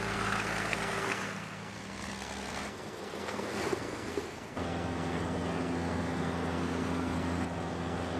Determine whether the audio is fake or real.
fake